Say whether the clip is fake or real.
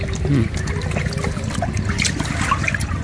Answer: real